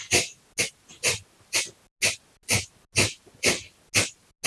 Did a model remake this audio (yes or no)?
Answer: no